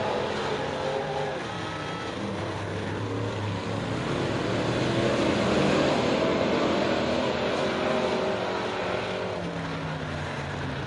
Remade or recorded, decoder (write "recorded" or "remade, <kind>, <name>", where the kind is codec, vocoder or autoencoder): recorded